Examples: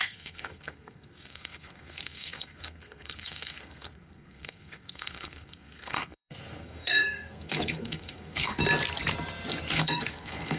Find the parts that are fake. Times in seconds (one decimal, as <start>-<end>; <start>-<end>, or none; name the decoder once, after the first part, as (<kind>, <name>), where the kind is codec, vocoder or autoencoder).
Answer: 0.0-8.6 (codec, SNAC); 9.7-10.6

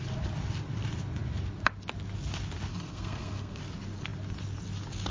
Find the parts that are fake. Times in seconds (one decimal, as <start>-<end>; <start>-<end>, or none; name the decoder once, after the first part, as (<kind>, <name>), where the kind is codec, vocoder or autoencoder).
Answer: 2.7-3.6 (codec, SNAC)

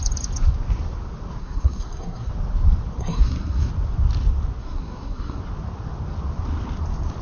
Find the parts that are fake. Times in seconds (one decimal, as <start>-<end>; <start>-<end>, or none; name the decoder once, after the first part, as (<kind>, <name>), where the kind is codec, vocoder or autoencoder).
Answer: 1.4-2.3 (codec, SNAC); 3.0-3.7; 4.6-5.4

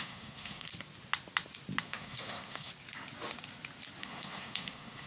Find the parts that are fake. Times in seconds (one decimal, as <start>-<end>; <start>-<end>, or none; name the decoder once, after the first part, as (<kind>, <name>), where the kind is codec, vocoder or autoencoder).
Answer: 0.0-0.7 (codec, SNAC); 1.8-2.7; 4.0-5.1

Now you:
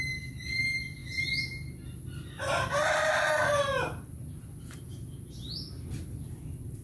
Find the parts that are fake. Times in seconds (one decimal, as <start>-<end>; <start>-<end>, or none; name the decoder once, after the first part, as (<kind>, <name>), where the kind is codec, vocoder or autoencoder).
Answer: none